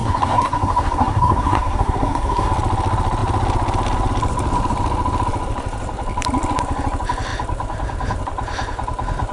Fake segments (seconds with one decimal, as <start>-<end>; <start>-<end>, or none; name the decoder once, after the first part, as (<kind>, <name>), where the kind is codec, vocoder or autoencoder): 0.0-2.5 (codec, SNAC)